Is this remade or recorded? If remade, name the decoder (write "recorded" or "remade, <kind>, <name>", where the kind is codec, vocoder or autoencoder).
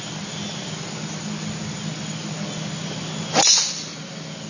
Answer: recorded